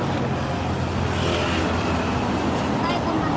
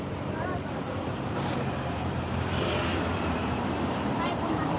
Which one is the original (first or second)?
first